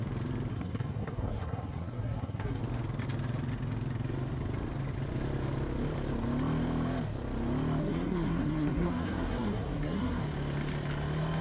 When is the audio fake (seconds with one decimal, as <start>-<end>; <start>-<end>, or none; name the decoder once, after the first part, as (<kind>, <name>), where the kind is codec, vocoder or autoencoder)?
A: 0.5-2.6 (codec, SNAC); 7.8-10.2